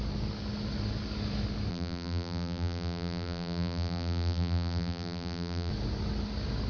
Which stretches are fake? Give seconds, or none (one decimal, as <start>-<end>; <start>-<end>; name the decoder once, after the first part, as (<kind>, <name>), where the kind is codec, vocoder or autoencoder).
1.7-5.7 (vocoder, BigVGAN v2)